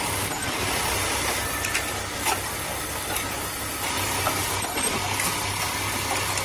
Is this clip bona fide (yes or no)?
yes